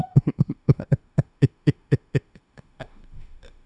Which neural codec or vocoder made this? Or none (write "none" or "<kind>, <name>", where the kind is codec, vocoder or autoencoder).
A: autoencoder, DAC-VAE